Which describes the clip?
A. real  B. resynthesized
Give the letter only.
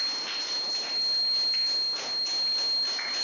A